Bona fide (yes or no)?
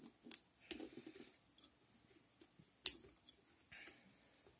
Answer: yes